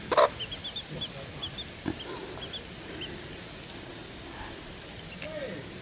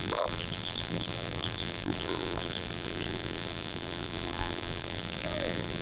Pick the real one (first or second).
first